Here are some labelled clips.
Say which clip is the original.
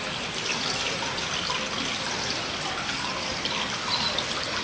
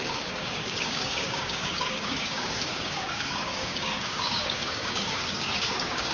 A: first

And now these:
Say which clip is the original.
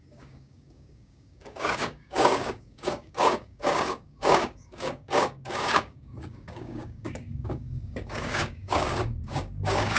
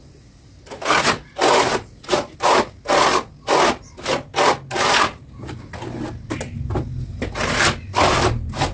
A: second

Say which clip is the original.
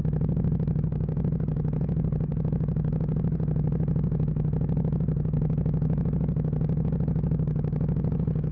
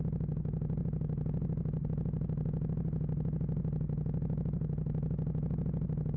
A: second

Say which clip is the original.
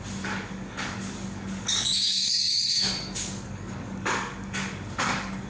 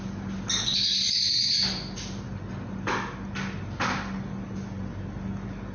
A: second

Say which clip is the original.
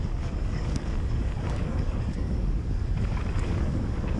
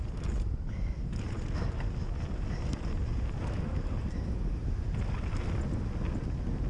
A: second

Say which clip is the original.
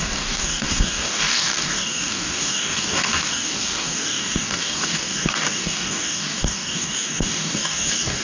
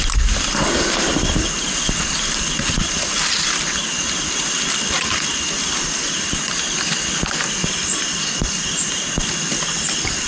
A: second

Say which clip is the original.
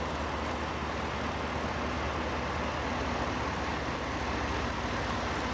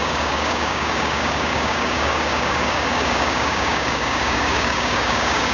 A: first